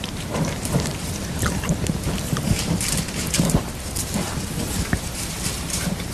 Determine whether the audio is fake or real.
fake